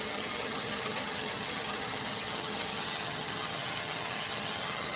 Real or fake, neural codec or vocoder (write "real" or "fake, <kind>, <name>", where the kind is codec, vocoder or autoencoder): fake, vocoder, HiFi-GAN